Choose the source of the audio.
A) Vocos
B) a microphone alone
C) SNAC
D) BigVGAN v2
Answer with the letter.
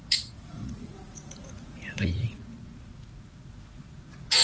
A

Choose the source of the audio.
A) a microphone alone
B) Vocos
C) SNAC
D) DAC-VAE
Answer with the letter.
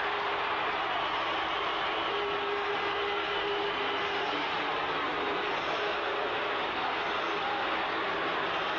A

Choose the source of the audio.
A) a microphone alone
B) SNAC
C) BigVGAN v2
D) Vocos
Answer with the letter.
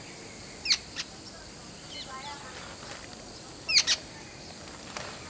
A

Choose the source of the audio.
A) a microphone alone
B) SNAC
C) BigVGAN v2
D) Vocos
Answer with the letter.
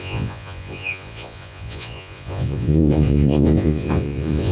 D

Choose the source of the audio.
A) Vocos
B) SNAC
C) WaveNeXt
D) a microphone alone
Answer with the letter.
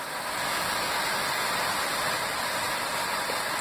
D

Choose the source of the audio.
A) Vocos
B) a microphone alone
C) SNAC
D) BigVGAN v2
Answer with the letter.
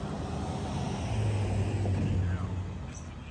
B